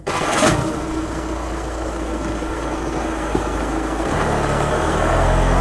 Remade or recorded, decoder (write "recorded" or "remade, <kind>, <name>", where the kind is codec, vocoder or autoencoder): remade, codec, SNAC